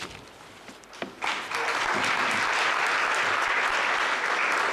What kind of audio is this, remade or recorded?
recorded